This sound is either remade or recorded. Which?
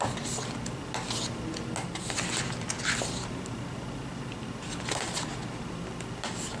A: recorded